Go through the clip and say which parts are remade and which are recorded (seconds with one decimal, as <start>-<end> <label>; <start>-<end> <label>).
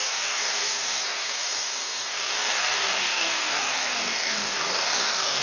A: 0.0-5.4 remade